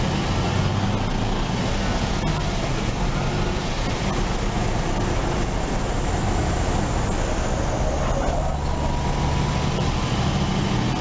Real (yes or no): yes